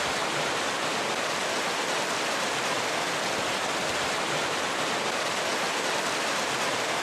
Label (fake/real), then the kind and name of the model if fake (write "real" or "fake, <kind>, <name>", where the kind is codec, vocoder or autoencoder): real